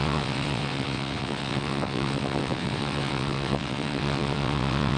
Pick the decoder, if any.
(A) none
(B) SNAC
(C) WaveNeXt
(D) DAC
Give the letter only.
C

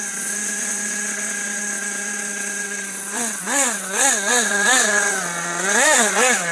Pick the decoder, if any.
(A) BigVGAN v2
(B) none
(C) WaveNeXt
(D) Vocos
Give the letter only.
C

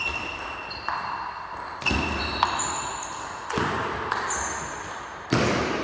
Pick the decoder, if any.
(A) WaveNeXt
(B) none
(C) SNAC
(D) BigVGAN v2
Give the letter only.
B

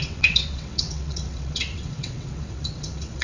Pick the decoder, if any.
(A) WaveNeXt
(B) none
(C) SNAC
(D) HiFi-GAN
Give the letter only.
A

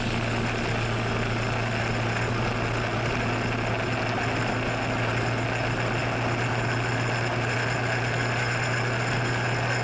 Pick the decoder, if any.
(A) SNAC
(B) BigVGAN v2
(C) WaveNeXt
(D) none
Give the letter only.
D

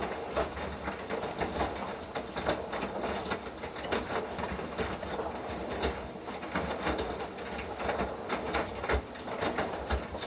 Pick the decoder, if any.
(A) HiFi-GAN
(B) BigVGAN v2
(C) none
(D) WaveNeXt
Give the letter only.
C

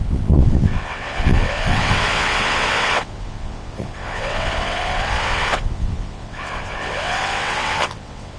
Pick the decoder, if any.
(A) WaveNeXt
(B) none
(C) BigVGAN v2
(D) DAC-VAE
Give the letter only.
A